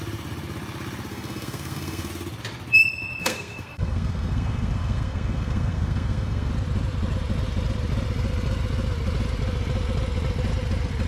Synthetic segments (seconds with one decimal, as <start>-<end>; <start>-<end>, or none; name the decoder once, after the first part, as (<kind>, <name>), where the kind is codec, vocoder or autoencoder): 1.1-2.1 (codec, SNAC); 3.2-6.5